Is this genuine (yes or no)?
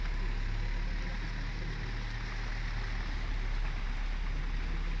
yes